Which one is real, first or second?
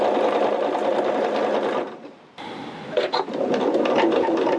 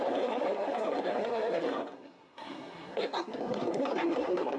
first